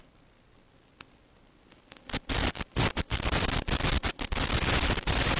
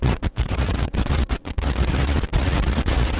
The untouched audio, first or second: first